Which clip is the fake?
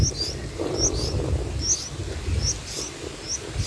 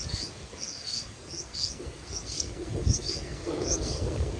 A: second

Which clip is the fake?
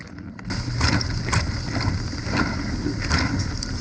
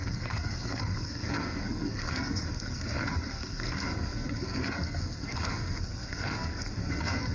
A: second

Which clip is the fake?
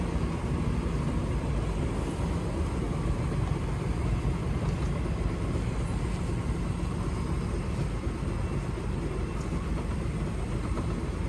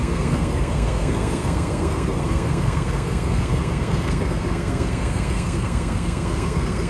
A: second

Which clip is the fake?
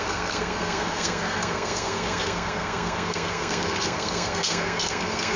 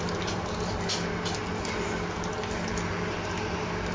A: first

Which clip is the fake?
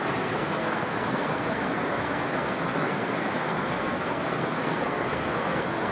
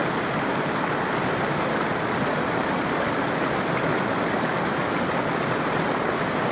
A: first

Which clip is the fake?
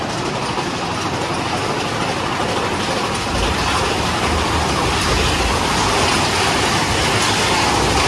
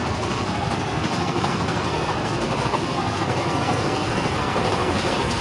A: second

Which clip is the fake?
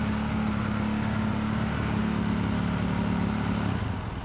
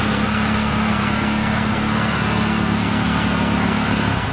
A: second